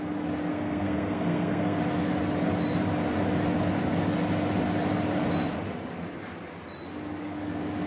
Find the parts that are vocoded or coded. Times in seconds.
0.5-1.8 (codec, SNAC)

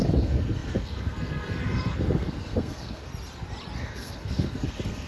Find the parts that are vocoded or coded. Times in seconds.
0.0-3.1 (codec, SNAC); 3.8-5.1

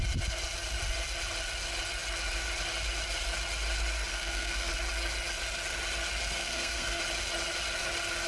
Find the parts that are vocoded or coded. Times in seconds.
4.1-4.7 (codec, SNAC); 6.4-7.0